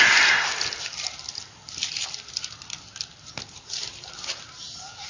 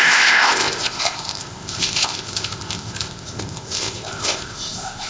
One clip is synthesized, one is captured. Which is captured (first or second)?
first